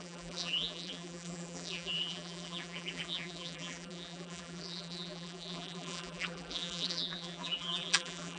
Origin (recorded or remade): remade